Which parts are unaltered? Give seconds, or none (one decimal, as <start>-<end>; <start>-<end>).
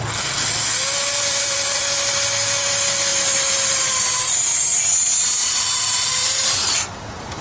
0.0-1.0; 1.8-5.4; 6.7-7.4